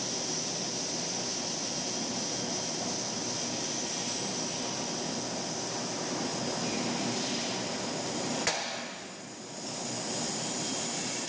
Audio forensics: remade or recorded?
recorded